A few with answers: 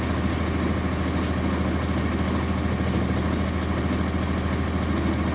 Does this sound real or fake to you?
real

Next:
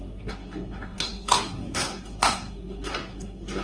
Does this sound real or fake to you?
fake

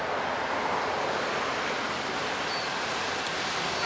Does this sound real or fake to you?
fake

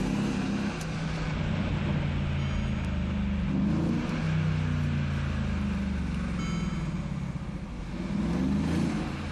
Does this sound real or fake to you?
real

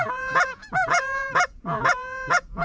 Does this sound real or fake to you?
fake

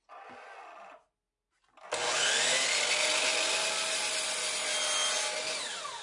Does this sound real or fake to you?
real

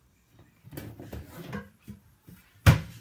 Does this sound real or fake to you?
real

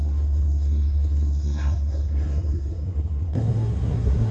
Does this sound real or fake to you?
fake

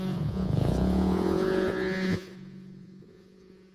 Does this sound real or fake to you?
fake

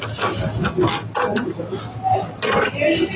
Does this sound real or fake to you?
real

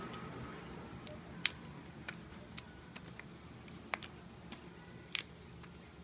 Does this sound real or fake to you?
real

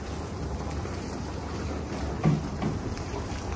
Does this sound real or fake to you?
fake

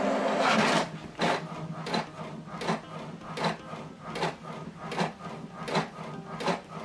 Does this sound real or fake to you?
real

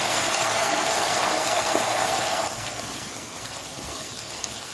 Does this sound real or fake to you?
fake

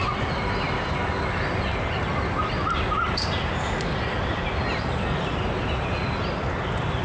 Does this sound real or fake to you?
real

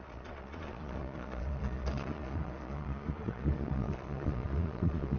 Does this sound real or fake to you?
fake